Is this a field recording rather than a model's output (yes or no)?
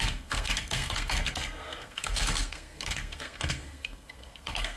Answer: no